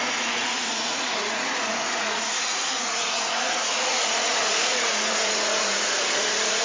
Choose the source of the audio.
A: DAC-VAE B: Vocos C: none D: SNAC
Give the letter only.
B